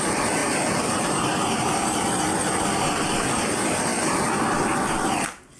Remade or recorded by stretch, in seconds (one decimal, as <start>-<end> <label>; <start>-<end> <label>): 0.0-5.6 recorded